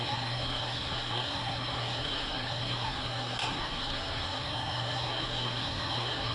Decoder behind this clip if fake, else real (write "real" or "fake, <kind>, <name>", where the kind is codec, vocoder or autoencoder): fake, codec, SNAC